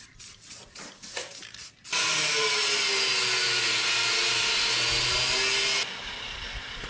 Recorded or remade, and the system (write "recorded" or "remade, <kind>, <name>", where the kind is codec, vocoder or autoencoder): recorded